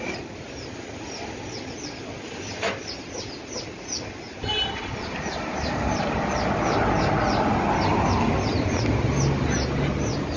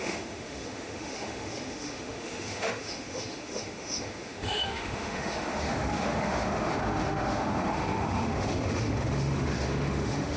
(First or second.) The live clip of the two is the first